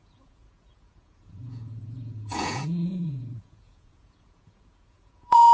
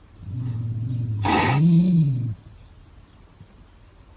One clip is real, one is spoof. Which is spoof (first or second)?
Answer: first